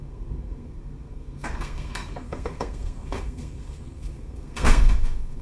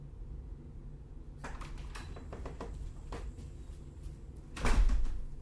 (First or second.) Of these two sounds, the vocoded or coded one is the first